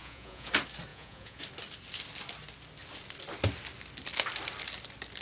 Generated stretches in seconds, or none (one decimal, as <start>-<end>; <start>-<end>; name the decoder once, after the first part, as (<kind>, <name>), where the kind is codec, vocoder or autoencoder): 0.0-0.5 (vocoder, Vocos); 0.9-1.4